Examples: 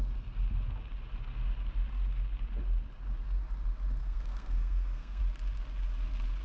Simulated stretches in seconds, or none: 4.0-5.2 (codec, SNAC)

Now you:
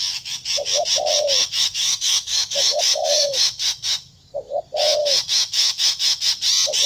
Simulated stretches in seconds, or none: 1.4-4.2 (autoencoder, DAC-VAE); 5.0-6.3

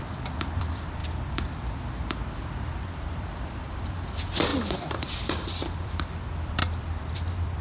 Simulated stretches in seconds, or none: 0.0-6.6 (vocoder, BigVGAN v2); 7.1-7.6

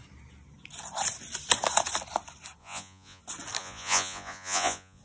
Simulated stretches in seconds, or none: 2.6-3.2 (vocoder, Vocos); 3.6-5.0

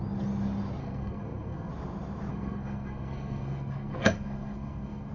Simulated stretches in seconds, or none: 0.8-1.7 (codec, SNAC); 2.3-5.1

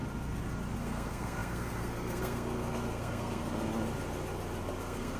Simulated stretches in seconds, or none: 0.8-3.4 (codec, SNAC); 4.8-5.2

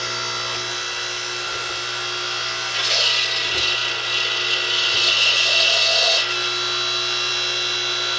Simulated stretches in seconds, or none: none